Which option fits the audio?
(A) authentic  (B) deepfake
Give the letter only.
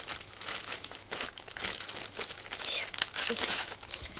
B